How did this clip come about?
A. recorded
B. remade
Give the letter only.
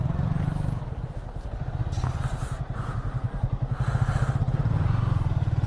A